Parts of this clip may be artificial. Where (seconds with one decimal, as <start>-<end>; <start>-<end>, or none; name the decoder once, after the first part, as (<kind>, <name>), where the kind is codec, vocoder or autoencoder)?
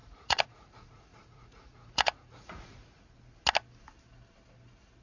0.0-3.0 (vocoder, Vocos)